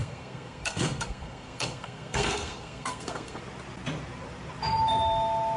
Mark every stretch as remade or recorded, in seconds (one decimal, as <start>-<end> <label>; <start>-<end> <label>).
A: 0.0-3.4 remade; 3.4-5.6 recorded